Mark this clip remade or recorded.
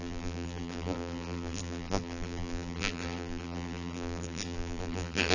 remade